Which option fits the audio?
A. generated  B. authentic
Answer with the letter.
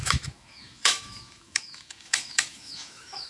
A